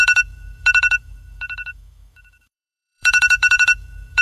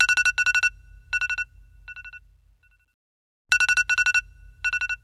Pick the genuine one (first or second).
second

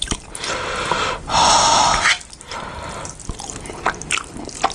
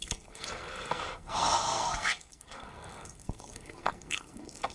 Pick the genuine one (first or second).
first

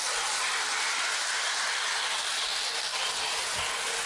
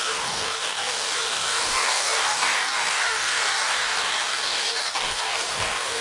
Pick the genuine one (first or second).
first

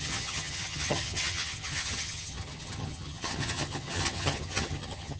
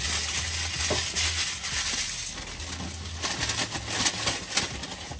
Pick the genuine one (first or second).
second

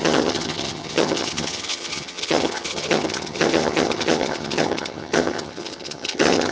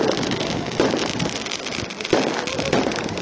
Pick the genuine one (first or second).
second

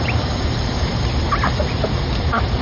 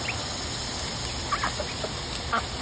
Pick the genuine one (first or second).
second